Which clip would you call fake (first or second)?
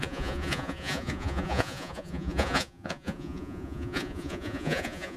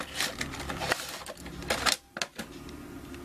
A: first